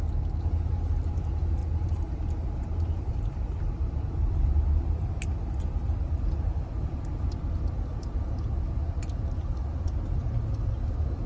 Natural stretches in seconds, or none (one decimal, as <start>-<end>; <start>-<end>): 0.0-1.6; 4.3-11.3